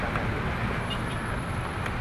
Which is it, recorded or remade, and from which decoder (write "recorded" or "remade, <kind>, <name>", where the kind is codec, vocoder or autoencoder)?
recorded